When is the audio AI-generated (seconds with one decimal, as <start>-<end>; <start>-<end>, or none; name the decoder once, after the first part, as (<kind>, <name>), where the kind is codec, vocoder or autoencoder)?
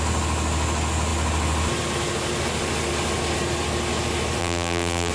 4.4-5.1 (vocoder, BigVGAN v2)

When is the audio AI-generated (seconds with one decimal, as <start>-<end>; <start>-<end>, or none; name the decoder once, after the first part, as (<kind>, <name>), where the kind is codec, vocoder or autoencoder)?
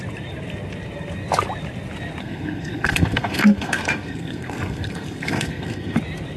2.2-6.0 (codec, SNAC)